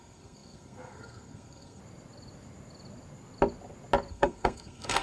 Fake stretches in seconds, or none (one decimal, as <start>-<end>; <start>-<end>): 0.0-1.8; 4.1-5.0

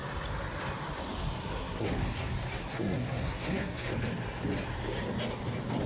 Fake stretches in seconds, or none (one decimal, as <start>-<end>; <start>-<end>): 1.4-2.0; 2.6-3.9

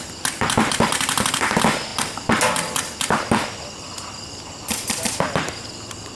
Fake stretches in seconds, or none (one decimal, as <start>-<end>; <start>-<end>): none

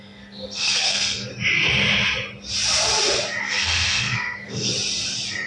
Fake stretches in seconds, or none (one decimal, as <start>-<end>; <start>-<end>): 0.0-1.3; 3.4-4.7